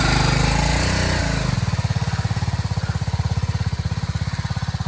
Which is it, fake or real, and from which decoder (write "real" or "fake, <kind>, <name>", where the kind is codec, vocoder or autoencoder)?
real